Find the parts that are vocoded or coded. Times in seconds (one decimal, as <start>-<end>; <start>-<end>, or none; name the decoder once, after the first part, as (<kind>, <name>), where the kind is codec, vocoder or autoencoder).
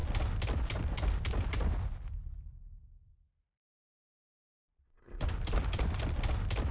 none